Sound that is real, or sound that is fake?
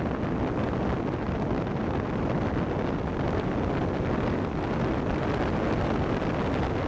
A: real